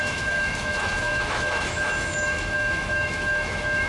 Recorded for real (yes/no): no